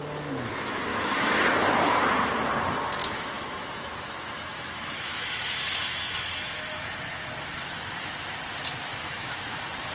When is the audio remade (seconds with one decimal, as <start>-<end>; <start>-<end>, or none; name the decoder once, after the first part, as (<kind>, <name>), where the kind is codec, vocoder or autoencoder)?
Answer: 0.9-1.5 (autoencoder, DAC-VAE); 3.0-7.3; 8.9-9.5